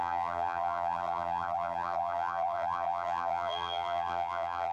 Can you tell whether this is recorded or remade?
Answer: remade